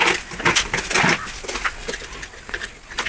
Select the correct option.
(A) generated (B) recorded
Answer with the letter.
B